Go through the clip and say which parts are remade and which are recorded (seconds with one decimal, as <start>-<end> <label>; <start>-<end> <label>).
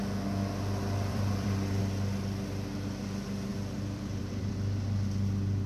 0.0-1.1 recorded; 1.1-1.8 remade; 1.8-3.5 recorded; 3.5-4.5 remade; 4.5-5.7 recorded